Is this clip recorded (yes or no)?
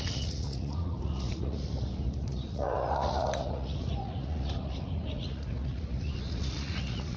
no